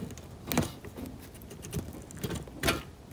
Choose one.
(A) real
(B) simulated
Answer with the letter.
A